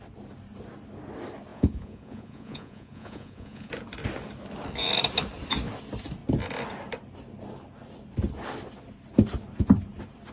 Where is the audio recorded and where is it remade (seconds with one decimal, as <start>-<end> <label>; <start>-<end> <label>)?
0.0-1.5 recorded; 1.5-3.7 remade; 3.7-10.3 recorded